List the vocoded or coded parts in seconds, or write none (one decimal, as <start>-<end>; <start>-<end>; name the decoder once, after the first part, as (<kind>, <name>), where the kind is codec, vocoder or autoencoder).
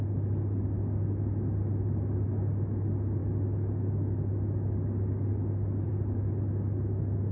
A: none